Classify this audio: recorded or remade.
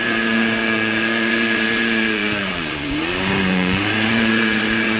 remade